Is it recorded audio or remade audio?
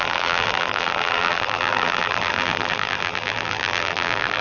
remade